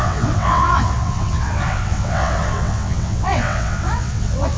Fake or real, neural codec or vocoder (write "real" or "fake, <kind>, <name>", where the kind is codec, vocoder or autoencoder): fake, vocoder, WaveNeXt